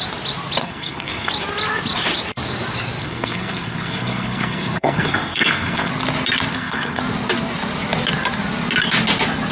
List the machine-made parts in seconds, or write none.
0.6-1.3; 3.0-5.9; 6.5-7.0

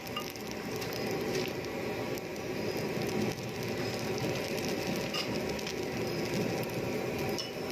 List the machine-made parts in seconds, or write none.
none

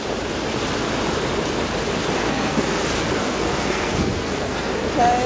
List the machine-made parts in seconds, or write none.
2.2-4.7

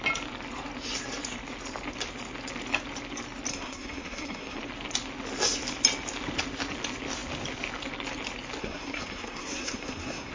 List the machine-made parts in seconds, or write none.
3.5-4.6; 8.6-10.3

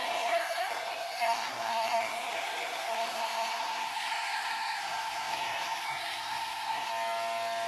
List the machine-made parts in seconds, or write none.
0.0-6.9